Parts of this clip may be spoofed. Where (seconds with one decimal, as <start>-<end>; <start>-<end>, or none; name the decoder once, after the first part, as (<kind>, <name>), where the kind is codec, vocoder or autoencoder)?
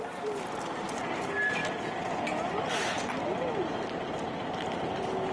none